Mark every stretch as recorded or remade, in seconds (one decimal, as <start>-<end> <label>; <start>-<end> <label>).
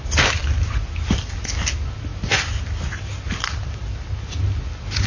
0.0-5.1 recorded